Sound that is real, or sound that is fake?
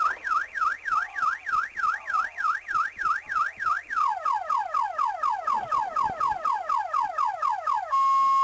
real